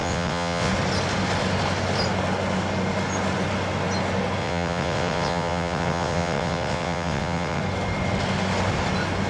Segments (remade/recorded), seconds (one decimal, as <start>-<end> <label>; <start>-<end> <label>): 0.0-0.7 remade; 0.7-4.4 recorded; 4.4-7.6 remade; 7.6-9.3 recorded